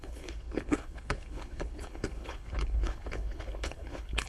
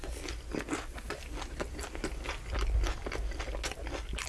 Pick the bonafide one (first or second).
second